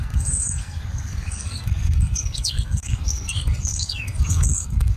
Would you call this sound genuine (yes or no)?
no